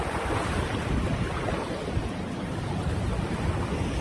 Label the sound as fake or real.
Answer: fake